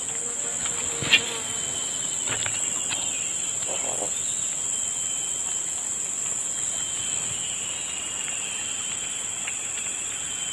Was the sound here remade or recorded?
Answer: recorded